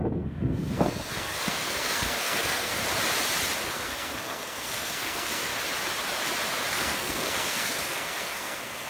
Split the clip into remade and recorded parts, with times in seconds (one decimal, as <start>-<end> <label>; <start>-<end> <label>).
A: 0.0-2.7 remade; 2.7-3.7 recorded; 3.7-5.5 remade; 5.5-6.7 recorded; 6.7-8.9 remade